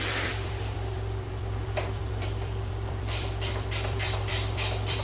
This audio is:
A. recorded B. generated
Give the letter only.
B